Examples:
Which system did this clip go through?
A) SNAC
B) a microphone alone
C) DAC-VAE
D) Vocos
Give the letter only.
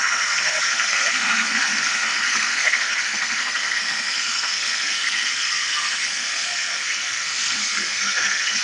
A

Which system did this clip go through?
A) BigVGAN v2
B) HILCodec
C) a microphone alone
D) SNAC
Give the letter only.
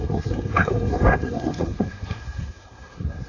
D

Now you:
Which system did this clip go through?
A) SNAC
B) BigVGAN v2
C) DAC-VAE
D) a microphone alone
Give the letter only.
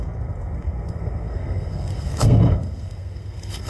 A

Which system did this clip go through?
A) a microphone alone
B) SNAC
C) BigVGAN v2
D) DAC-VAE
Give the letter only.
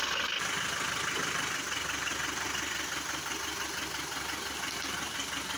A